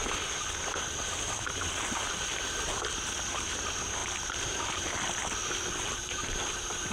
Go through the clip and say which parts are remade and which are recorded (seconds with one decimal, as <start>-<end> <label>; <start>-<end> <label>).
0.0-5.2 recorded; 5.2-6.9 remade